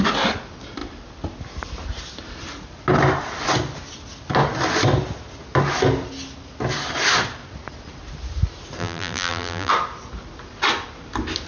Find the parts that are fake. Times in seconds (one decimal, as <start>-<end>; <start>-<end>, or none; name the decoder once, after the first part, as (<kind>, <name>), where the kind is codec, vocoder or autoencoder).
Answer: 8.8-9.7 (vocoder, BigVGAN v2)